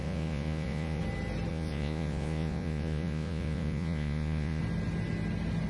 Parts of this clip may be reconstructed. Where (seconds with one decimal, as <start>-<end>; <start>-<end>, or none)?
0.0-1.0; 1.5-4.6